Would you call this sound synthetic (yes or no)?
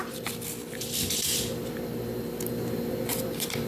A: no